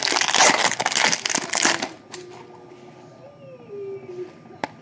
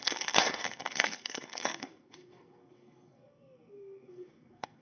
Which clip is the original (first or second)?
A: first